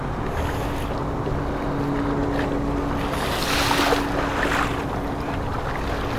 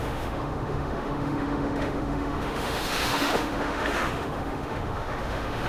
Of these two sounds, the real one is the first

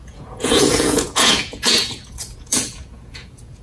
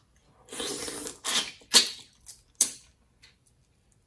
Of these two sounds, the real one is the second